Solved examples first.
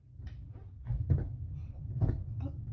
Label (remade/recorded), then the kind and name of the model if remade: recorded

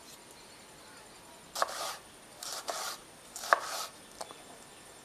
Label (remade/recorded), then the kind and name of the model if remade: recorded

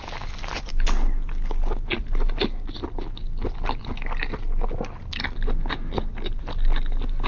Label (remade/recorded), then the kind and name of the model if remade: recorded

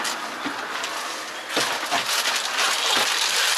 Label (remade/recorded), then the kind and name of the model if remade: recorded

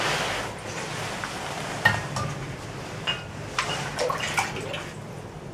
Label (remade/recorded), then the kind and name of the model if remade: recorded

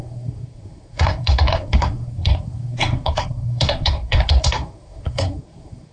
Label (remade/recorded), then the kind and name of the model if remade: remade, codec, SNAC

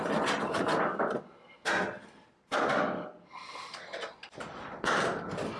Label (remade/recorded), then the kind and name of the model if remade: recorded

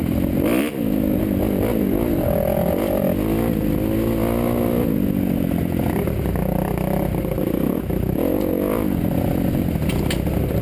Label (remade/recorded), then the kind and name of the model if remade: recorded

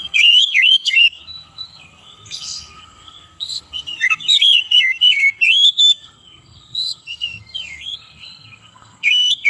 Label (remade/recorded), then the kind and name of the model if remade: remade, codec, SNAC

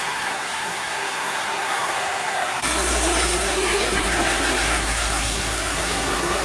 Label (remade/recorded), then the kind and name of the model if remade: remade, codec, SNAC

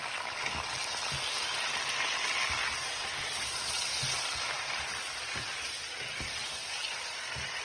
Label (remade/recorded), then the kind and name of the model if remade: recorded